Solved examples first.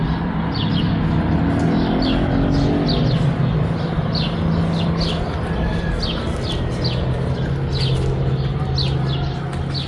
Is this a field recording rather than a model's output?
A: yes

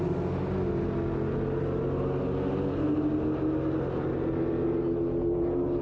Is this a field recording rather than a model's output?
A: yes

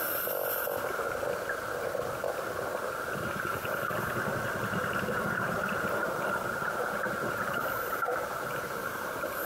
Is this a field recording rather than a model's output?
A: no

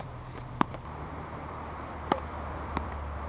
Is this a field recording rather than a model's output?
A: no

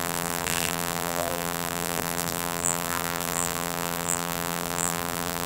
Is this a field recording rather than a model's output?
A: no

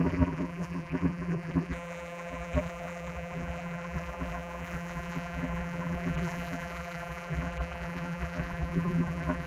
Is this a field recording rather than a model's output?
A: no